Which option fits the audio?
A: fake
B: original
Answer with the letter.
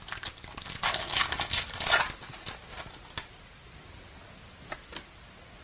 B